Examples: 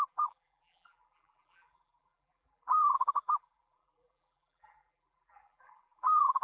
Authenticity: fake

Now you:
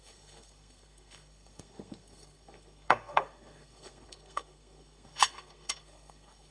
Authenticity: fake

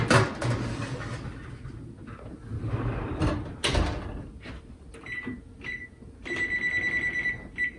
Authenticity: real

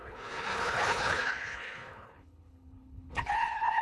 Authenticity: fake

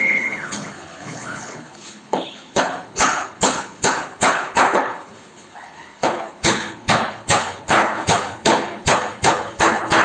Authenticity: fake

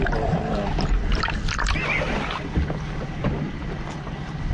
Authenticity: real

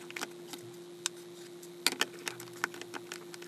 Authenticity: real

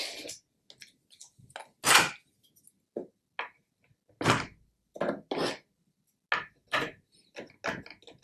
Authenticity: real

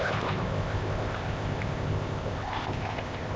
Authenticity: fake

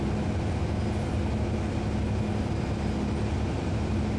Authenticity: real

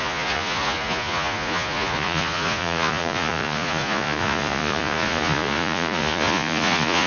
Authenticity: fake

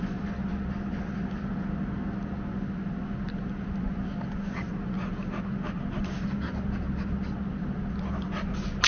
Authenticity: real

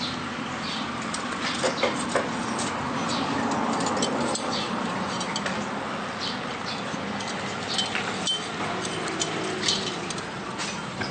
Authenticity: real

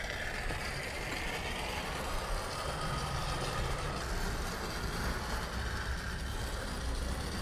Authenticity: real